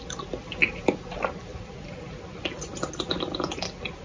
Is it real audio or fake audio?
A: real